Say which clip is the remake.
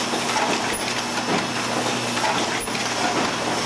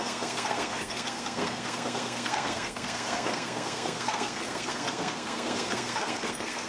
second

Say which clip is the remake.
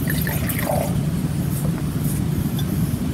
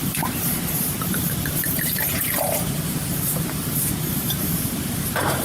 second